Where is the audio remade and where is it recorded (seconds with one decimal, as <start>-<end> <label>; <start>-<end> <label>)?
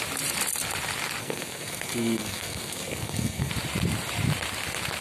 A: 0.0-1.2 recorded; 1.2-3.5 remade; 3.5-5.0 recorded